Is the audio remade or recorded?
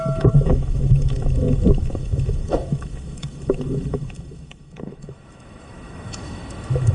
remade